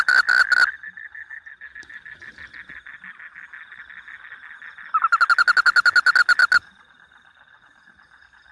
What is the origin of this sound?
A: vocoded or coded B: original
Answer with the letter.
B